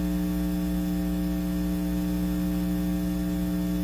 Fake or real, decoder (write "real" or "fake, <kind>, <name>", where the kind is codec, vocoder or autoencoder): real